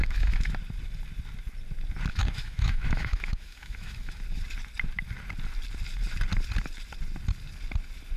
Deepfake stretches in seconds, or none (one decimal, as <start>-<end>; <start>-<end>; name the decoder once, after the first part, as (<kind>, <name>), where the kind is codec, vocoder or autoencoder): 0.0-0.5 (autoencoder, DAC-VAE); 2.1-4.2